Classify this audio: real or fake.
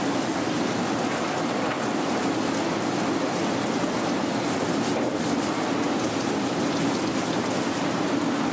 real